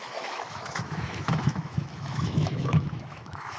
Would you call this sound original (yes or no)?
no